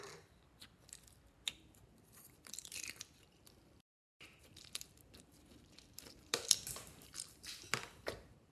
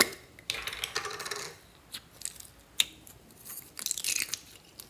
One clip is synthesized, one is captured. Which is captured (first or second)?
second